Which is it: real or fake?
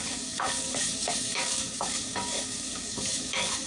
fake